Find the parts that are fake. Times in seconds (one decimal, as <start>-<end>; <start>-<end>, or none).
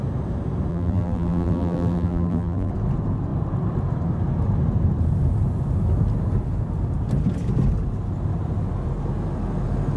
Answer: 0.7-2.7